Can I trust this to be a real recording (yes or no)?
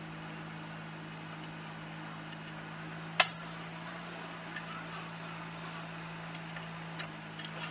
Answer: yes